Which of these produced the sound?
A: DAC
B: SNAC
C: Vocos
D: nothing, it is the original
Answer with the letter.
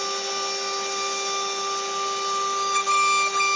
D